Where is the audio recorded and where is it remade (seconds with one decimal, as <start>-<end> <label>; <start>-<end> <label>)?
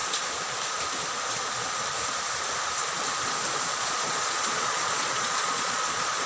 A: 0.0-3.6 recorded; 3.6-6.3 remade